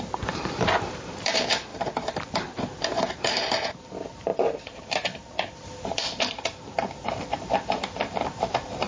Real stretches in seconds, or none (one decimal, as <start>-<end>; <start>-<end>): none